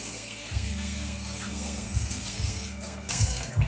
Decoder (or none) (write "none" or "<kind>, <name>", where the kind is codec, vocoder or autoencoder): codec, SNAC